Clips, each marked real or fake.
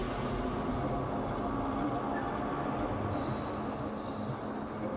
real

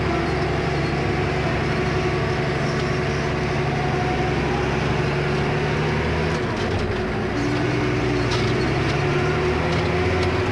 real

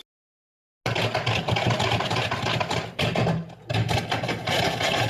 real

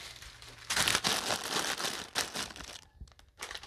real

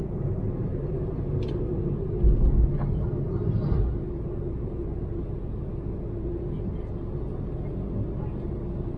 real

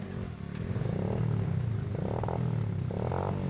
real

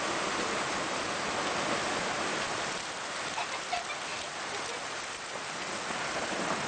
real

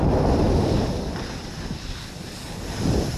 real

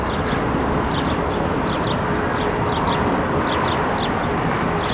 real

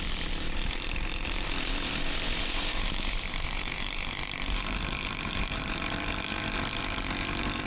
fake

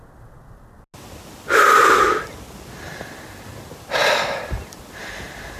real